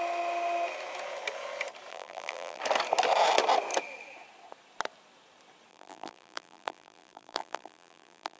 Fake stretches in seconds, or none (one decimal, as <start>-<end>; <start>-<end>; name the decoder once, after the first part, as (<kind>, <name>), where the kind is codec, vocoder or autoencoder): 1.9-2.6 (vocoder, BigVGAN v2); 5.7-8.4